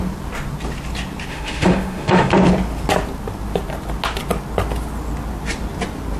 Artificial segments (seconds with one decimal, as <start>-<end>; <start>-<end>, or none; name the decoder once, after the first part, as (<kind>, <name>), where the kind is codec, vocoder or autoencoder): 1.3-2.3 (autoencoder, DAC-VAE)